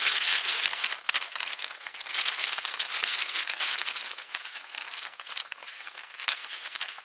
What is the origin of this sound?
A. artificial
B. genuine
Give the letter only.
A